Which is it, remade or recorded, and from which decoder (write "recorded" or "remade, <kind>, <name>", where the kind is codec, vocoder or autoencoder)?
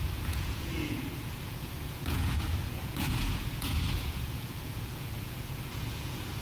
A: remade, vocoder, Vocos